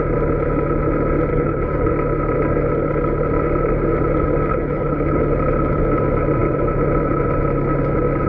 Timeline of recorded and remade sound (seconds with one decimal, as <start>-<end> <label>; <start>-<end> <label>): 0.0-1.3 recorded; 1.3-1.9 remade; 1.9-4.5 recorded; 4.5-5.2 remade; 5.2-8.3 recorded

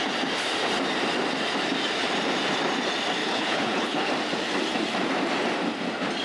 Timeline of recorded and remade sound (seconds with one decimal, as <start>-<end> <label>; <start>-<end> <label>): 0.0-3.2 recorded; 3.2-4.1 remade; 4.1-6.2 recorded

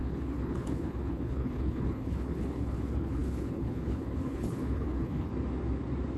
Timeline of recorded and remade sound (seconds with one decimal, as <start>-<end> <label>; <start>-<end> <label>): 0.0-5.3 remade; 5.3-6.2 recorded

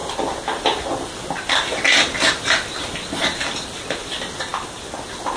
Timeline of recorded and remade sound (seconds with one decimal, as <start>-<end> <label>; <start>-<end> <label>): 0.0-5.4 recorded